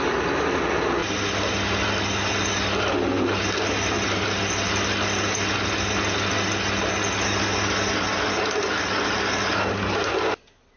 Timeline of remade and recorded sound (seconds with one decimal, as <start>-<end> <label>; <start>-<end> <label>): 0.0-10.8 recorded